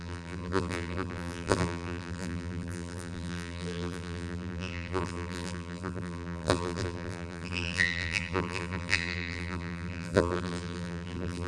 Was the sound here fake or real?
fake